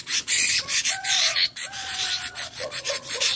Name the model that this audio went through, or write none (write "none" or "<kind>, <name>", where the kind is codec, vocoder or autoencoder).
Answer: vocoder, Vocos